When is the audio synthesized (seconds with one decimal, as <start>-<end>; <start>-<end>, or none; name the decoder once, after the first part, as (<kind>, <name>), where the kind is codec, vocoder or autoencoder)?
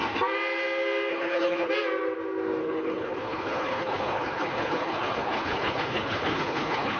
1.1-1.7 (codec, HILCodec); 2.6-7.0